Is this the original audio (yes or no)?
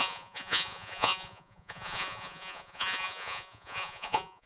no